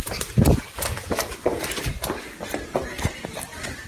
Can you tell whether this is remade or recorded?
recorded